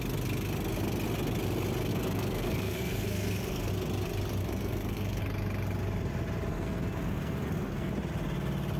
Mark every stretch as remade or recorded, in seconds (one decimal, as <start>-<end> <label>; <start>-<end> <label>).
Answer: 0.0-1.9 recorded; 1.9-3.7 remade; 3.7-4.4 recorded; 4.4-5.2 remade; 5.2-6.5 recorded; 6.5-7.9 remade; 7.9-8.8 recorded

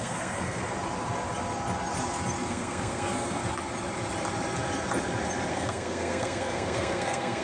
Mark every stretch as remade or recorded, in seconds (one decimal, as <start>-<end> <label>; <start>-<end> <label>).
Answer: 0.0-0.6 remade; 0.6-2.5 recorded; 2.5-3.4 remade; 3.4-5.5 recorded; 5.5-7.4 remade